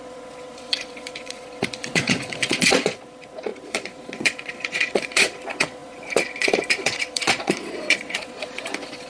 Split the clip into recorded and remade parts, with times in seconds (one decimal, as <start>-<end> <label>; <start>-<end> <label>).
0.0-9.1 remade